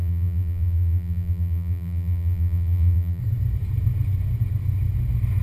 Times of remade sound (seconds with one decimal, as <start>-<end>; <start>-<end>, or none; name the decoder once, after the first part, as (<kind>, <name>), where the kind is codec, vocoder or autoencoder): 0.0-3.2 (vocoder, BigVGAN v2)